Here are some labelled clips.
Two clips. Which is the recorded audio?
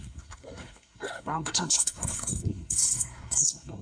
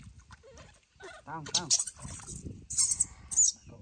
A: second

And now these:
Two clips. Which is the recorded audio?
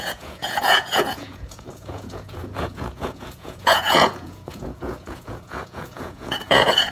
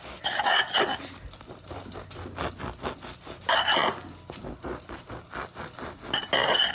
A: second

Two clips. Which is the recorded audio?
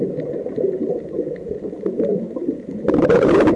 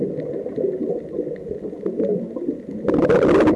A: second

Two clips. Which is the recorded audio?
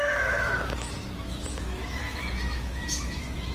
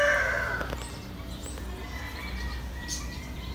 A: second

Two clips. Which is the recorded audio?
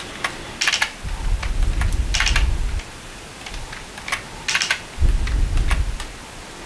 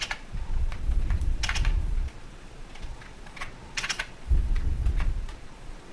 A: first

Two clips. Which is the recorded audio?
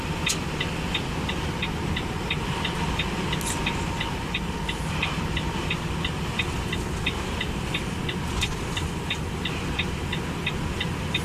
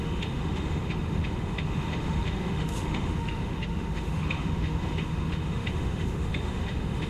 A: first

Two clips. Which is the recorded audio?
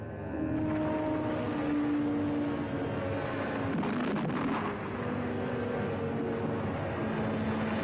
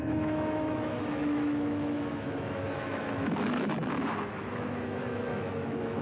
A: first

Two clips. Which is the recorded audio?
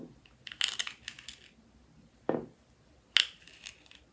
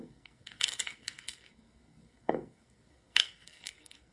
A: first